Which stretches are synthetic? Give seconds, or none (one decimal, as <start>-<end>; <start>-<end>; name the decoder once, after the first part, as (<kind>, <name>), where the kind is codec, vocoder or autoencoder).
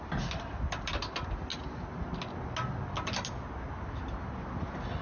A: none